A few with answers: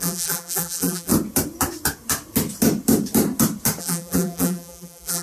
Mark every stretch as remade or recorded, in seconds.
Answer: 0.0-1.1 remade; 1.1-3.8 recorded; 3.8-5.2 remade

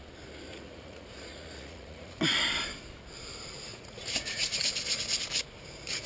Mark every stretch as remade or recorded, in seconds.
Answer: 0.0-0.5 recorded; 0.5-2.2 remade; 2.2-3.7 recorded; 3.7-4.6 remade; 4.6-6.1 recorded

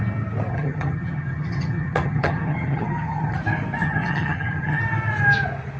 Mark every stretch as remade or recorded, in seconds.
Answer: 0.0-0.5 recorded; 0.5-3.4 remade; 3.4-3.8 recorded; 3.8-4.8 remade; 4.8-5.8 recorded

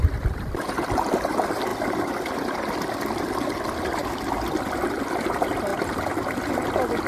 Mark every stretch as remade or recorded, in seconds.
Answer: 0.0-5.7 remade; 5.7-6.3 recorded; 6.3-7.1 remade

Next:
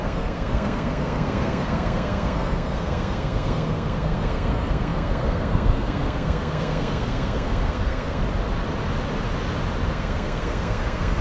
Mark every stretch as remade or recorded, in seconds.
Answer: 0.0-8.2 remade; 8.2-9.9 recorded; 9.9-11.2 remade